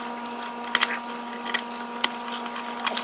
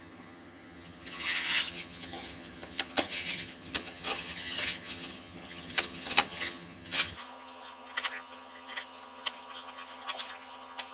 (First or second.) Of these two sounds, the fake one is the second